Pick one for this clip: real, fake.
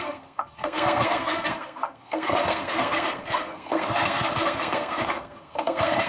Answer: fake